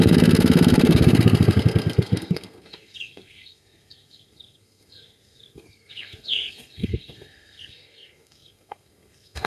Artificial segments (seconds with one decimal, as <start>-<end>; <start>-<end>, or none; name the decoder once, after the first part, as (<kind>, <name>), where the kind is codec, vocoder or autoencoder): 0.0-9.5 (codec, SNAC)